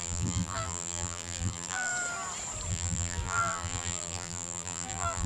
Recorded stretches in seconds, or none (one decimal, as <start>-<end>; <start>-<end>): 1.9-2.7